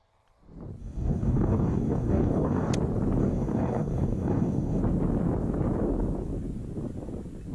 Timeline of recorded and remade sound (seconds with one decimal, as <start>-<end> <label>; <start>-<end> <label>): 0.0-0.8 recorded; 0.8-2.7 remade; 2.7-3.2 recorded; 3.2-4.8 remade; 4.8-7.5 recorded